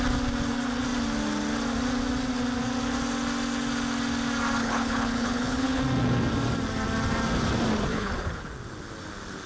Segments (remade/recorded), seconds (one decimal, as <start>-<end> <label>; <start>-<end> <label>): 0.0-4.6 recorded; 4.6-5.8 remade; 5.8-7.9 recorded; 7.9-8.5 remade; 8.5-9.5 recorded